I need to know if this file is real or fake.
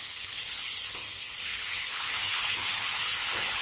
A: fake